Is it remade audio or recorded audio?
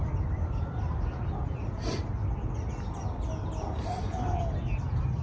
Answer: recorded